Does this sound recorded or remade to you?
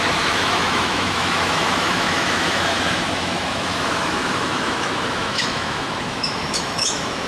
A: remade